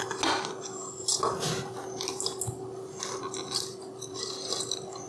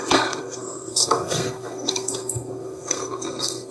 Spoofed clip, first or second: second